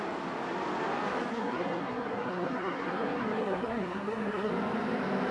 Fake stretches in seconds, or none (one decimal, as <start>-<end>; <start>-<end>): 1.3-4.5